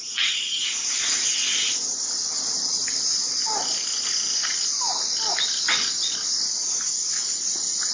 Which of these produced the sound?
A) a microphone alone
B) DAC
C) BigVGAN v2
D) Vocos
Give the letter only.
A